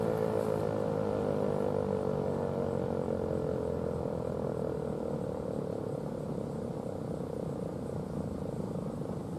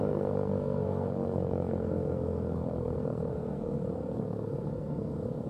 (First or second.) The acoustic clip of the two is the first